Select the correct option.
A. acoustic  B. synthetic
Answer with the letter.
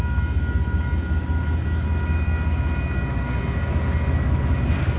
A